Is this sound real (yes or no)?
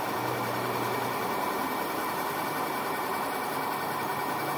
no